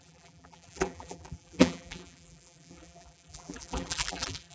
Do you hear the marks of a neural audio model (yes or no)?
yes